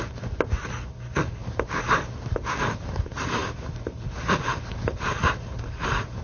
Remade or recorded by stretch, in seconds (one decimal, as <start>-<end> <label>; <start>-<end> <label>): 0.0-1.4 remade; 1.4-2.6 recorded; 2.6-6.2 remade